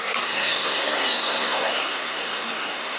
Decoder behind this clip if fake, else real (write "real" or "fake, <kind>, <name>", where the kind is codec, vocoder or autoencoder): fake, codec, SNAC